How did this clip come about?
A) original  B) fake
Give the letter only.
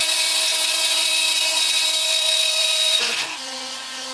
B